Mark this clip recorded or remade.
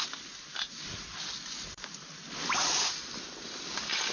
recorded